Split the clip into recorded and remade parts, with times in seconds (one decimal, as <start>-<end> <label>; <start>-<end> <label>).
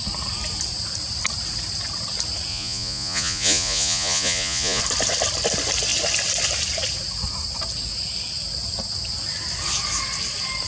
0.0-2.5 recorded; 2.5-4.8 remade; 4.8-10.7 recorded